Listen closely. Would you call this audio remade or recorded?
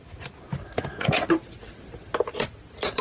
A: recorded